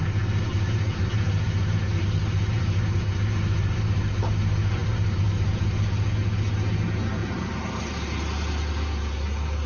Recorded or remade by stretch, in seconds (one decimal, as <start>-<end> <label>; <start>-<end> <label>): 0.0-0.5 recorded; 0.5-4.2 remade; 4.2-4.8 recorded; 4.8-5.6 remade; 5.6-7.2 recorded; 7.2-7.7 remade; 7.7-9.7 recorded